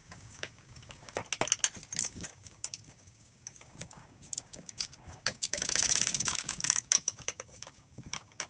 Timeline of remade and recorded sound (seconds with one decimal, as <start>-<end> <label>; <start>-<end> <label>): 0.0-1.2 remade; 1.2-2.0 recorded; 2.0-8.5 remade